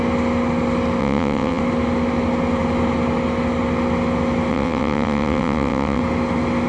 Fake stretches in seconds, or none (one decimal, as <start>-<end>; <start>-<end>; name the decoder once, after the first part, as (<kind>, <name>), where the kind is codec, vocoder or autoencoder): 1.0-1.6 (vocoder, WaveNeXt); 4.5-6.0

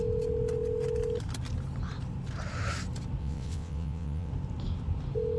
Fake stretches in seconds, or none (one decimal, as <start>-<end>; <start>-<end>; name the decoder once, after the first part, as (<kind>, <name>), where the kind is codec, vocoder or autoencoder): 3.2-4.3 (vocoder, WaveNeXt)

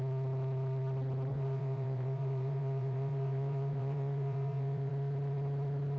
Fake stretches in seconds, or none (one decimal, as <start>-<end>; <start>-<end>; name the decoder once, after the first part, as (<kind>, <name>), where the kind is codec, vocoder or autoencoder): 1.3-4.9 (vocoder, WaveNeXt)

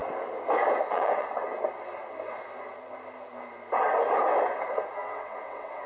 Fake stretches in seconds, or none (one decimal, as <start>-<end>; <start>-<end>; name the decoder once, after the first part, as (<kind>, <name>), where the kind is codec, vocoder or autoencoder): 0.8-1.5 (vocoder, WaveNeXt); 5.0-5.9

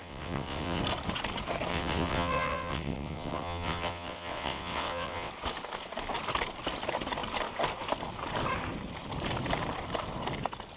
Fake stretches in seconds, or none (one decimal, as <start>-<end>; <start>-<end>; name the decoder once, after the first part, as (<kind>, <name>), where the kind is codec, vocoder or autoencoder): 0.0-0.8 (vocoder, WaveNeXt); 1.7-5.3

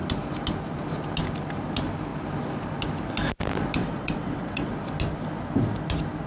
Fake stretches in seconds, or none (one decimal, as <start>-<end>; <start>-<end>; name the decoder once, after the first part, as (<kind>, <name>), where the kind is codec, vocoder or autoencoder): 3.8-4.7 (vocoder, WaveNeXt)

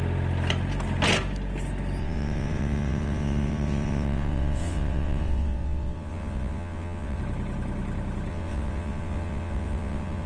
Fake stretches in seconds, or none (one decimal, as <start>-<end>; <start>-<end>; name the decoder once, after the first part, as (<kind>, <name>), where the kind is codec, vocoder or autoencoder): 2.0-7.2 (vocoder, WaveNeXt); 8.3-10.3

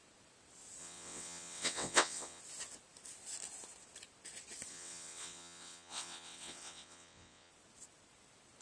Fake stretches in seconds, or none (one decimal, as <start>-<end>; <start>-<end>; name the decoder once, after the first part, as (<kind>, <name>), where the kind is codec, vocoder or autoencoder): 0.8-2.4 (vocoder, WaveNeXt); 4.7-7.5